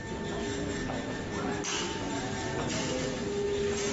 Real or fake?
real